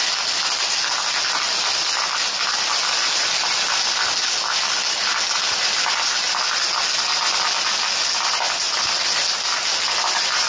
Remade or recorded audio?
recorded